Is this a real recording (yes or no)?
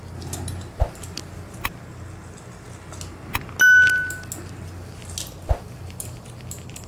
yes